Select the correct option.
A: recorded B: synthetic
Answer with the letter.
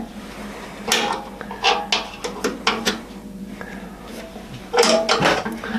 A